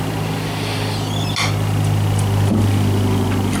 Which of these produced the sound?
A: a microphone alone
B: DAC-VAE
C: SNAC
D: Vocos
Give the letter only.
A